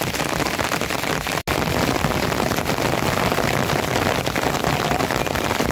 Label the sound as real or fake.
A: real